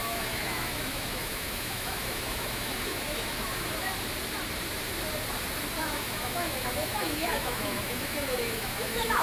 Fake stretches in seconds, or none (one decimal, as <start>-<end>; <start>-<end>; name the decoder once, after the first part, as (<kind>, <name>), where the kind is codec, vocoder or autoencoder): 0.0-3.9 (autoencoder, DAC-VAE); 5.8-9.2